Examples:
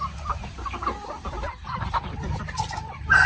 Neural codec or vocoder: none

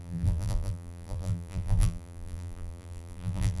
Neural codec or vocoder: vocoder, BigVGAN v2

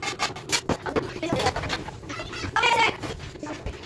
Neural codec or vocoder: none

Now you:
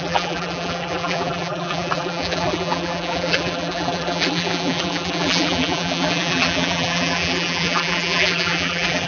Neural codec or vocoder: vocoder, BigVGAN v2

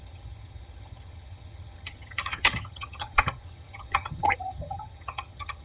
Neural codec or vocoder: vocoder, HiFi-GAN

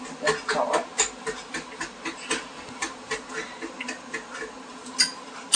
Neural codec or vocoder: none